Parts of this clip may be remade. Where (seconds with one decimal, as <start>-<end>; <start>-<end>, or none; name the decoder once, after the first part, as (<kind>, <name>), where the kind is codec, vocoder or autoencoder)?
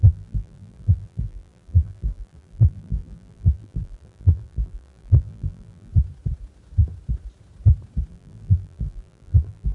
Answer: 0.0-5.9 (vocoder, BigVGAN v2); 8.1-9.7